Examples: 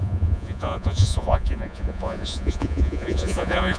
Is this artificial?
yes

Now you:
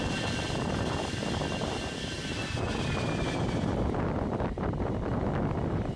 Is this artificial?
no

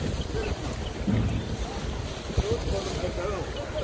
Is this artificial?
no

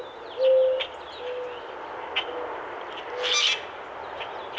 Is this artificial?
no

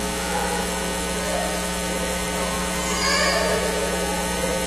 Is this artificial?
no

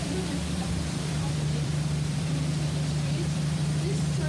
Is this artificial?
yes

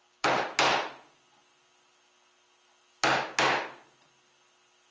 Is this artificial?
no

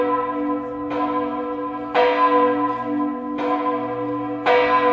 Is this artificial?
no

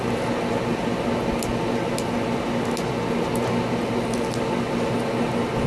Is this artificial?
no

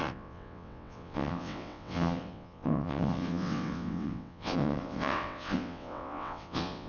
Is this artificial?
yes